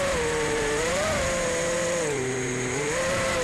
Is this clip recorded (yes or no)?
no